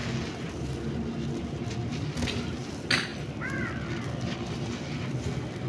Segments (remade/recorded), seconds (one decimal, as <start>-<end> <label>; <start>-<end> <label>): 0.0-5.7 recorded

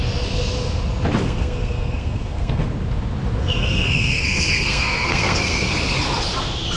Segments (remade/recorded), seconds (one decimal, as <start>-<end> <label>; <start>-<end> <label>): 0.0-1.2 recorded; 1.2-2.7 remade; 2.7-3.4 recorded; 3.4-5.7 remade; 5.7-6.8 recorded

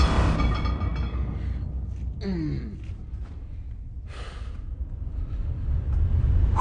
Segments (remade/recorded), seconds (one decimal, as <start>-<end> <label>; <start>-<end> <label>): 0.0-6.6 recorded

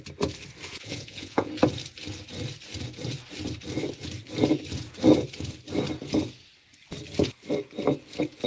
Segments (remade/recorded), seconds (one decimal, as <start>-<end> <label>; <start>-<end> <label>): 0.0-0.7 recorded; 0.7-1.5 remade; 1.5-8.5 recorded

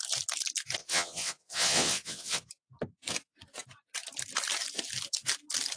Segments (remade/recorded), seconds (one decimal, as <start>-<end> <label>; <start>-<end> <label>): 0.0-0.8 recorded; 0.8-2.5 remade; 2.5-5.8 recorded

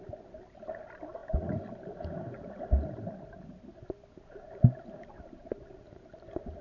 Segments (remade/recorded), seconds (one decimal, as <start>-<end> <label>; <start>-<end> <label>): 0.0-6.6 recorded

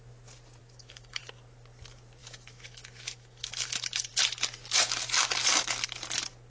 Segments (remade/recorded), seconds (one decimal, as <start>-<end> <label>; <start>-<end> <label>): 0.0-0.6 recorded; 0.6-1.2 remade; 1.2-2.2 recorded; 2.2-4.1 remade; 4.1-6.5 recorded